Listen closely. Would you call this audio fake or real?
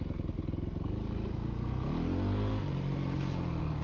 real